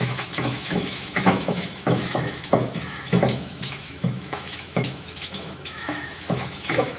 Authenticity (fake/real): fake